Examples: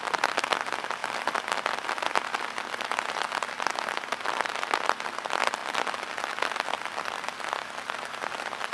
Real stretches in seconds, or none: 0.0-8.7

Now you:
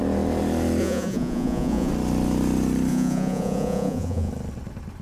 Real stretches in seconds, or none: 0.0-0.8; 1.9-2.9; 4.3-5.0

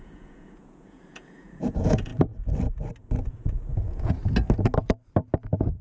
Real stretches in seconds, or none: 2.1-3.2; 4.2-5.8